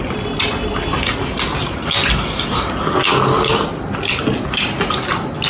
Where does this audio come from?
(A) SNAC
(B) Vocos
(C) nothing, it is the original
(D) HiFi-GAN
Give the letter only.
C